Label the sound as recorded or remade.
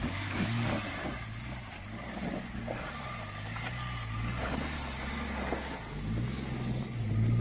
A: recorded